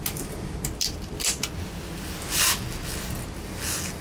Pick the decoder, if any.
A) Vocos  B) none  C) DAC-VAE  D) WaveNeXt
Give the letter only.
B